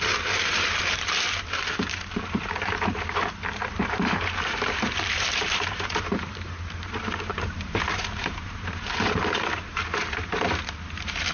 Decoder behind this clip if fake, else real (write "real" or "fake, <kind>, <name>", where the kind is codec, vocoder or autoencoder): fake, vocoder, BigVGAN v2